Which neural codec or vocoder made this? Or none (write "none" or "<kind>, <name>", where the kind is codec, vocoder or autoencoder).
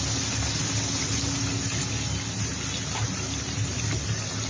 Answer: none